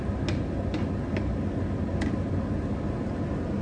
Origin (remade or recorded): recorded